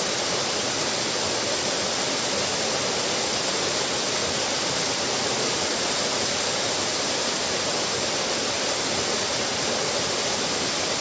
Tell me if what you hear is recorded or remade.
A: recorded